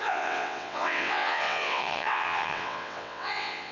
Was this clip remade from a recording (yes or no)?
yes